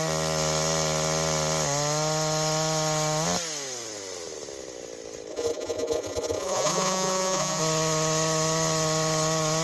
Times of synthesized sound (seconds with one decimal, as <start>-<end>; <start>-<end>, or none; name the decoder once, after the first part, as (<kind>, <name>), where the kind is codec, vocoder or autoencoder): 5.3-7.6 (vocoder, Vocos)